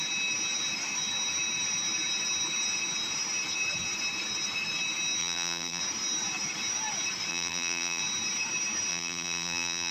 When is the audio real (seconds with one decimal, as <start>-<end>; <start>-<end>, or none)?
0.0-5.2; 5.8-7.3; 8.0-8.9